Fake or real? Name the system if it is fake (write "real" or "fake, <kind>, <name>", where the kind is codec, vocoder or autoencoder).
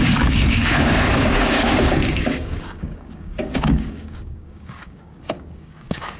fake, codec, DAC